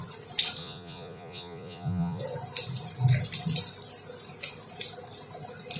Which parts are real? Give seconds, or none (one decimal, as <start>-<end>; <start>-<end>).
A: 0.0-0.6; 2.2-5.8